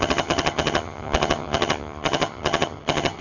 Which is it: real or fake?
fake